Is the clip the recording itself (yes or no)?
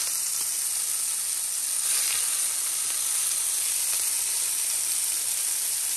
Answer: yes